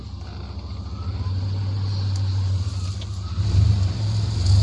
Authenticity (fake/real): real